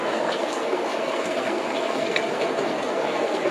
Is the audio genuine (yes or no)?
no